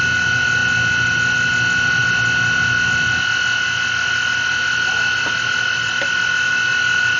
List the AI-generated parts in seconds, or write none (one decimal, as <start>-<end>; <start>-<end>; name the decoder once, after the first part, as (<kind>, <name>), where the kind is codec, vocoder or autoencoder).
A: none